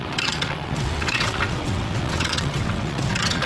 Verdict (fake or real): fake